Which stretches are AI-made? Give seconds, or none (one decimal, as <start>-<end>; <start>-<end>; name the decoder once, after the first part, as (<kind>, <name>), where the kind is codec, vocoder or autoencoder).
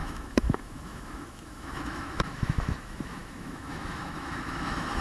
0.0-5.0 (autoencoder, DAC-VAE)